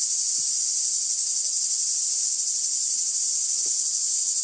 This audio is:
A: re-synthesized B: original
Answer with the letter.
B